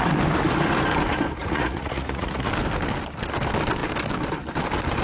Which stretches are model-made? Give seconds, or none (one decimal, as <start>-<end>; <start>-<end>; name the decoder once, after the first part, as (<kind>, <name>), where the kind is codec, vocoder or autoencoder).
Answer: 1.4-2.5 (vocoder, Vocos)